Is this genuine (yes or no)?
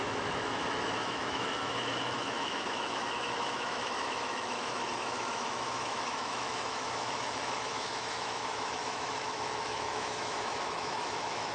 no